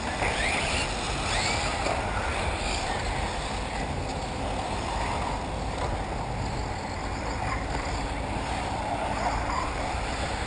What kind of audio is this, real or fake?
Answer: real